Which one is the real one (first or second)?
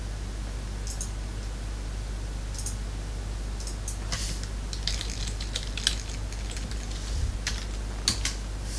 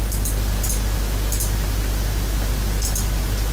first